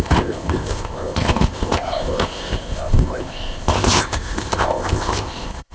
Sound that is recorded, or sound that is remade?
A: remade